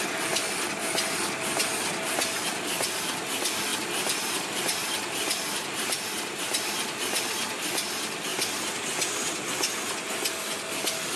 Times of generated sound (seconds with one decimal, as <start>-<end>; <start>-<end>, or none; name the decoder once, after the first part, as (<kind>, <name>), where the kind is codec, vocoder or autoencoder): 3.7-4.6 (vocoder, BigVGAN v2); 8.3-8.8